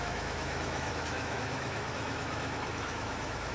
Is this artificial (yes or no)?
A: yes